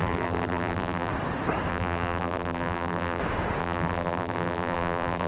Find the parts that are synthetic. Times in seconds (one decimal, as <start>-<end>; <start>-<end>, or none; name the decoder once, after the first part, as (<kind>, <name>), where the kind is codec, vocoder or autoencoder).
0.0-1.1 (vocoder, BigVGAN v2); 1.7-3.2; 3.6-5.3